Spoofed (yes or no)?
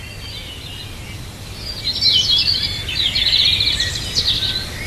no